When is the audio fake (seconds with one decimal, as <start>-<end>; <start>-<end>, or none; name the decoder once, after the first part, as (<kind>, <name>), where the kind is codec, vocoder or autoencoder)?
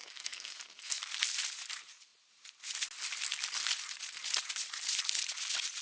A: 0.0-1.0 (codec, SNAC)